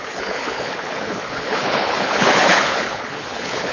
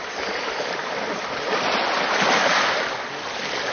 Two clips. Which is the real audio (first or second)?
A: second